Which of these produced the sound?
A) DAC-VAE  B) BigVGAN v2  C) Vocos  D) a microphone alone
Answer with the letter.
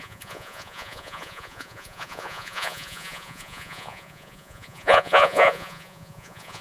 C